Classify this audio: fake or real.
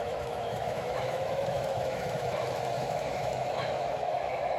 fake